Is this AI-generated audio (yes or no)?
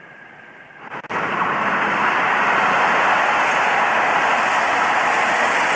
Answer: yes